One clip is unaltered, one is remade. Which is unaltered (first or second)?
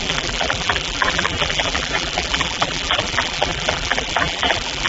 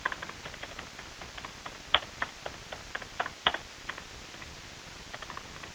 second